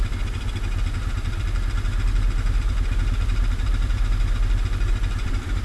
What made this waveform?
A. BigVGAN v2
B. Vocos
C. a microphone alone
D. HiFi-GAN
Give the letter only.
C